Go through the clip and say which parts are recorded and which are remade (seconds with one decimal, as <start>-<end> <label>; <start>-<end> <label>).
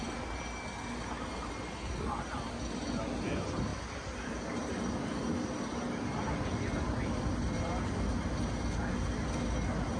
0.0-3.7 recorded; 3.7-8.0 remade; 8.0-10.0 recorded